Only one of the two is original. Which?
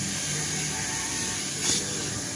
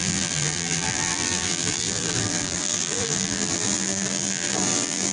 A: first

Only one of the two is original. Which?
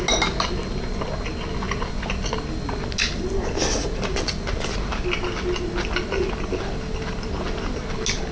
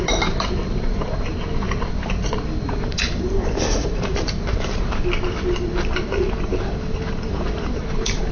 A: first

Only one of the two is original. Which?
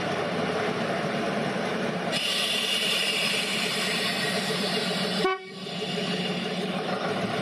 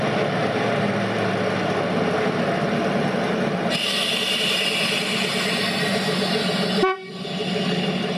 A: second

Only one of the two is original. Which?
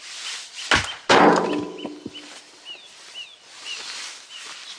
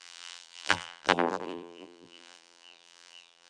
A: first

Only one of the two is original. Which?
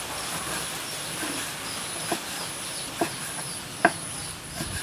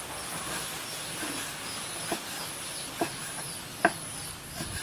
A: second